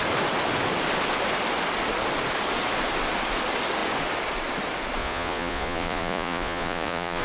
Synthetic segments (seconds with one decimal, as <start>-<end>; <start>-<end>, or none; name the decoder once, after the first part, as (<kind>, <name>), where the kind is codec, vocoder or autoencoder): 5.0-7.2 (vocoder, Vocos)